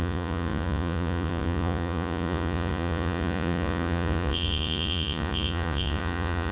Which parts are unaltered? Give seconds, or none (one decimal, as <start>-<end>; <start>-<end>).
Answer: none